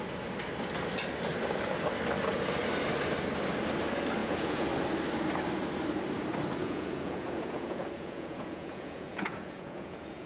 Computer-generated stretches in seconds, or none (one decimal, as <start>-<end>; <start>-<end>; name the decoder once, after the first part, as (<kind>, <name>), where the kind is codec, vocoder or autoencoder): 4.2-4.7 (vocoder, Vocos); 6.6-10.3